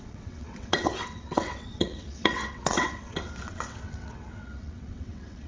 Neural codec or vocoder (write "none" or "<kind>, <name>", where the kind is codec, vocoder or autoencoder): vocoder, WaveNeXt